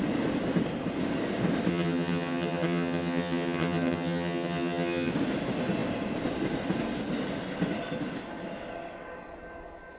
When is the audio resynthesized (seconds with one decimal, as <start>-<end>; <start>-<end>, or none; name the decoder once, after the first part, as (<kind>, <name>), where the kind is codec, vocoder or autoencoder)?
1.7-5.1 (vocoder, HiFi-GAN)